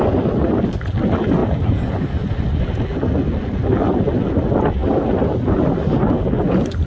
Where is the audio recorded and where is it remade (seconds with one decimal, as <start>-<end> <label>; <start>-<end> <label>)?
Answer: 0.0-6.9 recorded